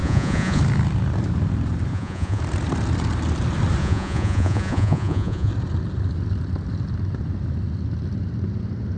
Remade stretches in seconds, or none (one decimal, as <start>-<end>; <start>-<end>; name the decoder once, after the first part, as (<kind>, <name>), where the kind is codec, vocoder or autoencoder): 0.0-0.6 (vocoder, Vocos); 1.9-2.4; 3.8-5.5